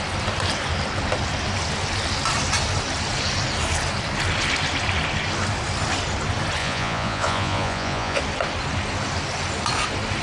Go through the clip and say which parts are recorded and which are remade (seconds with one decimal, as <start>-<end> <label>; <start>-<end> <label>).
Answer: 0.0-6.6 recorded; 6.6-8.2 remade; 8.2-10.2 recorded